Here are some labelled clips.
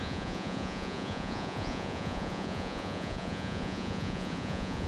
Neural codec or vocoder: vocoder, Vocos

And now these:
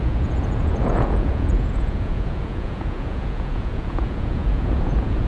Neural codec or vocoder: vocoder, Vocos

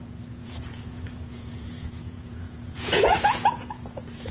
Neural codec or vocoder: vocoder, Vocos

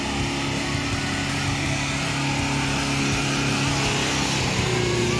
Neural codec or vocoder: none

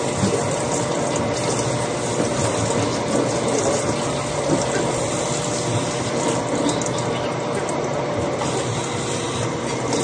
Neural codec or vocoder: none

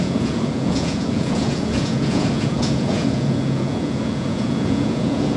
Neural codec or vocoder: vocoder, Vocos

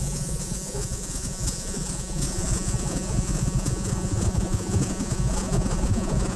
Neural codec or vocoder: vocoder, Vocos